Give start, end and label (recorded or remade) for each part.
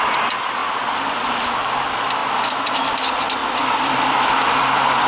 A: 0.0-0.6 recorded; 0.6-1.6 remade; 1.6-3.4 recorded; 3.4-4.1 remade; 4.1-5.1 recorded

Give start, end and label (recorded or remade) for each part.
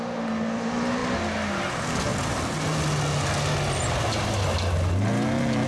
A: 0.0-5.7 recorded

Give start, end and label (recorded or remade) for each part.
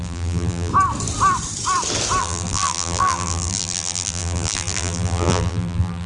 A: 0.0-0.7 remade; 0.7-2.2 recorded; 2.2-6.1 remade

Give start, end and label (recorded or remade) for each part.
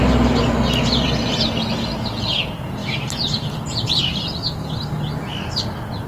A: 0.0-2.8 recorded; 2.8-4.0 remade; 4.0-6.1 recorded